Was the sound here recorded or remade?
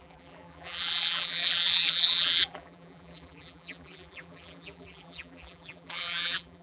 remade